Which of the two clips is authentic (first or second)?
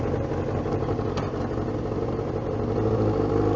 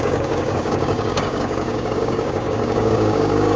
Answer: first